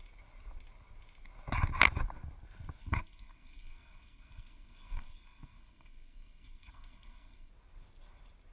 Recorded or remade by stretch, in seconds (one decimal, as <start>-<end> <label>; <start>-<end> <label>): 0.0-2.8 recorded; 2.8-7.5 remade; 7.5-8.5 recorded